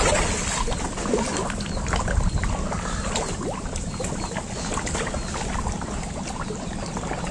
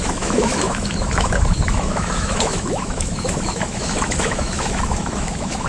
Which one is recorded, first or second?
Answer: first